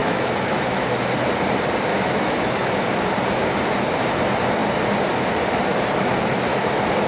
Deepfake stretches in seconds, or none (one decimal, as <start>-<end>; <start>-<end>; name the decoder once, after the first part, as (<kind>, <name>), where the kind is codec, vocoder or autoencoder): 0.0-0.8 (autoencoder, DAC-VAE); 1.9-2.7